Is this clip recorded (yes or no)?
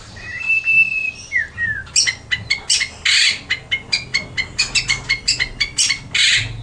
yes